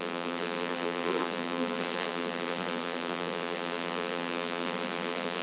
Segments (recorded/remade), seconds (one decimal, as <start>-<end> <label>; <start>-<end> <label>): 0.0-5.4 remade